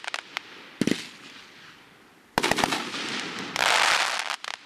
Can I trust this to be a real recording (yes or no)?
yes